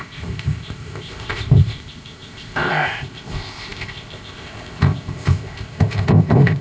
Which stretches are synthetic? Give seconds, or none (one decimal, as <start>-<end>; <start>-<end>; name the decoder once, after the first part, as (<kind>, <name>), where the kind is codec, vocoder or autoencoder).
0.0-6.6 (codec, ZipCodec)